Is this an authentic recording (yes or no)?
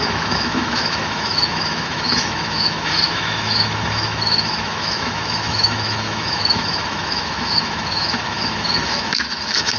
no